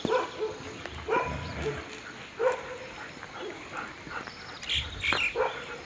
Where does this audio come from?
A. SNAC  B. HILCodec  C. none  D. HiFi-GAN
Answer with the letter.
C